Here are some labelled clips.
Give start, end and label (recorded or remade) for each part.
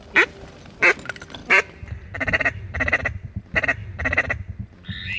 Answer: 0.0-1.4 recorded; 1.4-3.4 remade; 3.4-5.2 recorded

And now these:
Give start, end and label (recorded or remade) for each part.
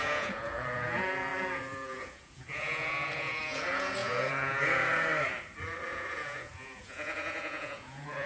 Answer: 0.0-5.1 remade; 5.1-5.9 recorded; 5.9-8.3 remade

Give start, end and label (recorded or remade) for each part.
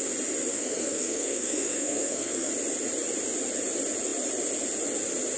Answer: 0.0-0.5 recorded; 0.5-2.5 remade; 2.5-5.4 recorded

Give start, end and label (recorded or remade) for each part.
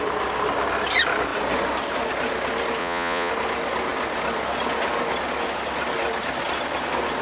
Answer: 0.0-2.8 recorded; 2.8-3.3 remade; 3.3-7.2 recorded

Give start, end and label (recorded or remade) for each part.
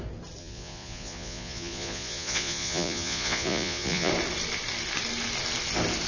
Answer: 0.0-0.4 recorded; 0.4-4.1 remade; 4.1-6.1 recorded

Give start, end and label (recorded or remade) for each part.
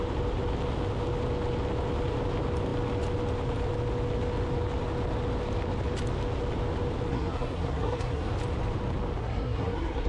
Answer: 0.0-7.1 recorded; 7.1-8.3 remade; 8.3-9.2 recorded; 9.2-10.1 remade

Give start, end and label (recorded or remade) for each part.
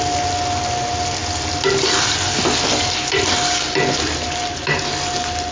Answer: 0.0-5.5 recorded